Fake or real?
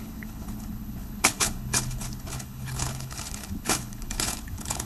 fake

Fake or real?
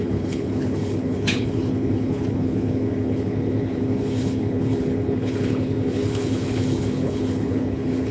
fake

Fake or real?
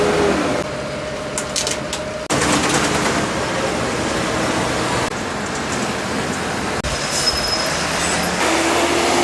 real